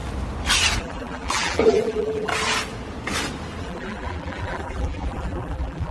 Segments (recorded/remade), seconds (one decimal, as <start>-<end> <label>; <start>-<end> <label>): 0.0-0.8 recorded; 0.8-2.3 remade; 2.3-3.6 recorded; 3.6-5.9 remade